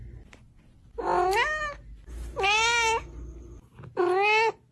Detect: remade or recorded recorded